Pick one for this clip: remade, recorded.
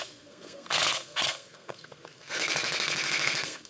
remade